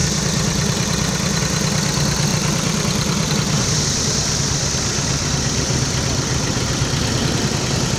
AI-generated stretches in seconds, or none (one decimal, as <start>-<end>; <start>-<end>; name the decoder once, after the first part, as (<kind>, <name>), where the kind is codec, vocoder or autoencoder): 0.0-1.4 (vocoder, BigVGAN v2); 2.3-3.3; 4.9-6.8